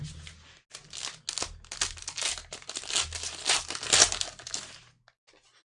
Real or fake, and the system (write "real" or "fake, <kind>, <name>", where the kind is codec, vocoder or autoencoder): real